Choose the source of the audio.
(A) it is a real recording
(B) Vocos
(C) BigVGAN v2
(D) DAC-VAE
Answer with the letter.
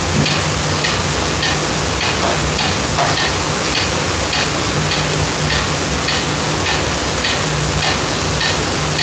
A